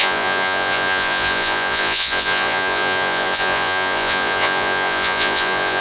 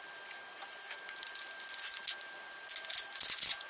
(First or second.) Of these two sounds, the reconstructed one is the first